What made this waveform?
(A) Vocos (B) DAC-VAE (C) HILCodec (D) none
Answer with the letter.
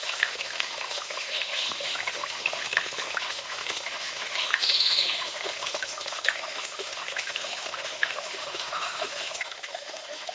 B